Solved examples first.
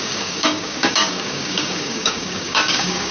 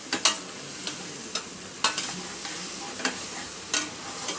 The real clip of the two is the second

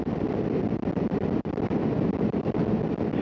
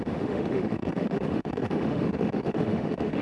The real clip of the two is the first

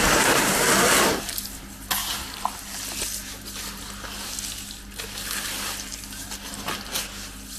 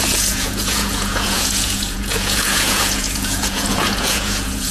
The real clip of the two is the first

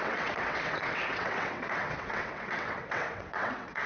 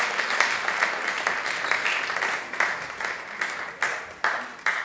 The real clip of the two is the second